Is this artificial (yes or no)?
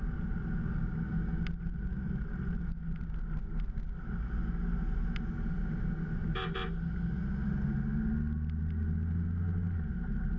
no